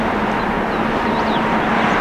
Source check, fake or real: real